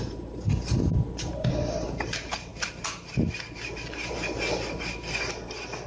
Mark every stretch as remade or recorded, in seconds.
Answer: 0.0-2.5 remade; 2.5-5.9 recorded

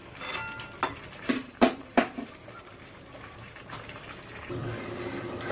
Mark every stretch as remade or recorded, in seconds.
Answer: 0.0-0.8 recorded; 0.8-4.6 remade; 4.6-5.5 recorded

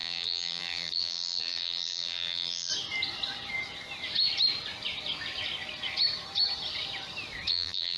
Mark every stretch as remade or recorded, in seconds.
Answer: 0.0-2.7 remade; 2.7-7.5 recorded; 7.5-8.0 remade